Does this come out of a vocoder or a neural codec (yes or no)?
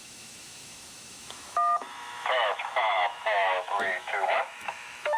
yes